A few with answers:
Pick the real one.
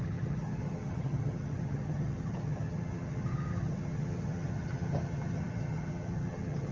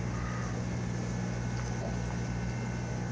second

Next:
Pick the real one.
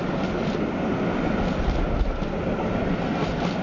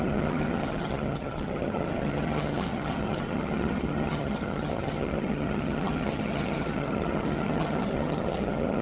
first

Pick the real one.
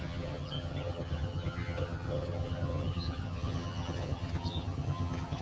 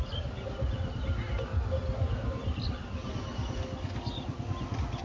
second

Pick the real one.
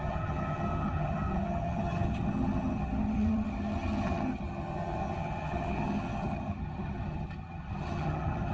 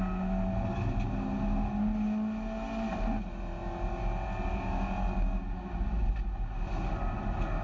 second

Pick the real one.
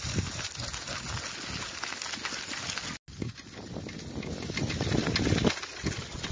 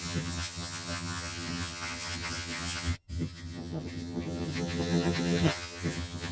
first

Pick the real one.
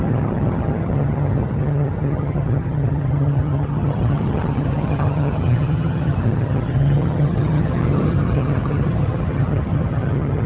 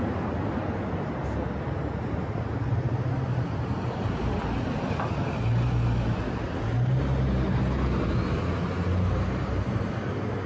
second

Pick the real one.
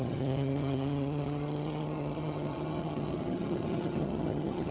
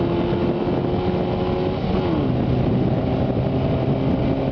second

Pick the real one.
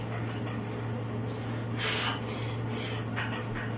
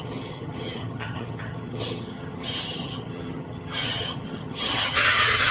first